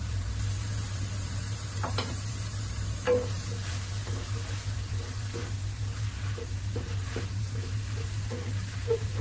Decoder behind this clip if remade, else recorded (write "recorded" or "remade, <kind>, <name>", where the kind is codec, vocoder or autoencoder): remade, vocoder, BigVGAN v2